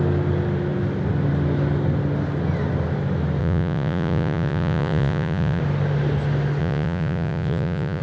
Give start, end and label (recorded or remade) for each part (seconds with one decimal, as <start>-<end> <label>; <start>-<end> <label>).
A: 0.0-3.4 recorded; 3.4-5.6 remade; 5.6-6.6 recorded; 6.6-8.0 remade